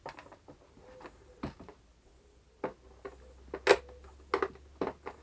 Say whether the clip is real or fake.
real